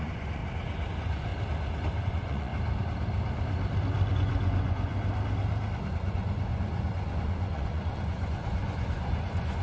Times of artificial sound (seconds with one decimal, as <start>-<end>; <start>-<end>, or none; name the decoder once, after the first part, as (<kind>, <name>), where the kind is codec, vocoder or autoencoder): 0.0-0.4 (vocoder, Vocos); 0.9-1.3; 2.0-2.5; 4.1-4.9; 5.9-9.6